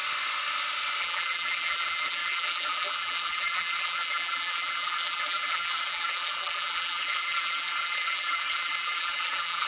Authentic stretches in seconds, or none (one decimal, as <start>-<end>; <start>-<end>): 0.0-1.0